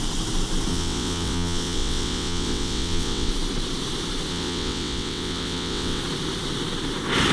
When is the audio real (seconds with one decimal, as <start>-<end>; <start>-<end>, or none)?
0.0-0.7; 3.3-4.3; 6.0-7.3